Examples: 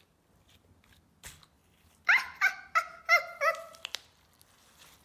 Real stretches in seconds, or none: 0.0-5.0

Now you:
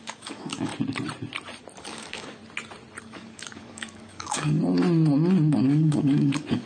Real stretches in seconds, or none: 0.7-1.8; 2.4-3.0; 4.6-5.5

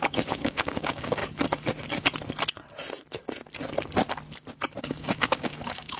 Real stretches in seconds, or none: 1.2-4.8

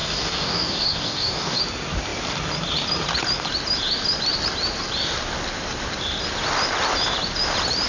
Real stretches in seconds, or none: 1.6-7.9

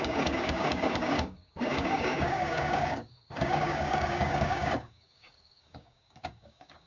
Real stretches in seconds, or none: none

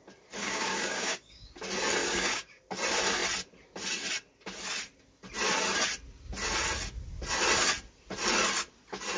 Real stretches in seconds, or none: 0.0-0.4; 1.5-2.0; 2.6-9.2

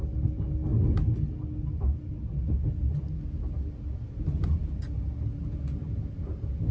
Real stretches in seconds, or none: 0.0-6.7

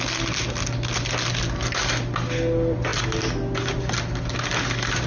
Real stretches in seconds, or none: 0.0-5.1